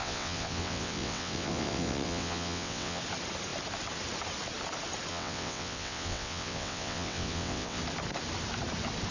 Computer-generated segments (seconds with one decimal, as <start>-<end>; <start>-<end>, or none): 0.0-3.0; 5.1-7.8